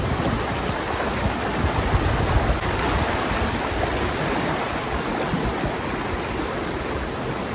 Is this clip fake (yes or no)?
no